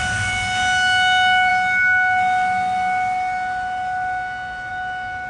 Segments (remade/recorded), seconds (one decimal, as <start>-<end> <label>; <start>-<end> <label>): 0.0-5.3 recorded